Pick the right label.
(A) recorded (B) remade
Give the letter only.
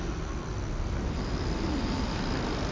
A